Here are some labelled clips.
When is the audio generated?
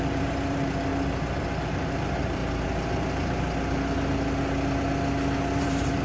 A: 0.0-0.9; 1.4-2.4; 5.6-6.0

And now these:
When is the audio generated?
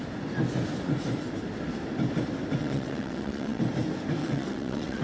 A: 2.6-3.6; 4.2-5.0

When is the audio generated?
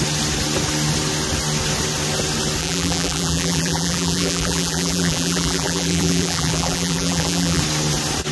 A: 2.6-7.6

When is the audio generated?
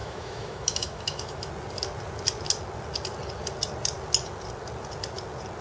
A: 0.0-1.5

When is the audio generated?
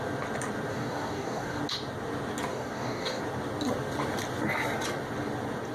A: 0.7-1.6; 2.5-3.2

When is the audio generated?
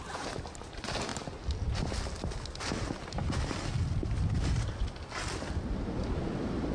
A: none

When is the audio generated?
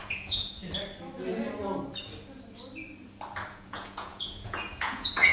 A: 0.0-0.6; 3.5-5.3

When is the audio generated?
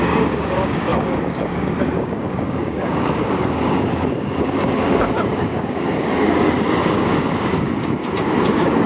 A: 0.0-8.0; 8.5-8.9